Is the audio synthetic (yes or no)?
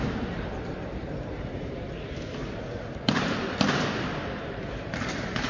yes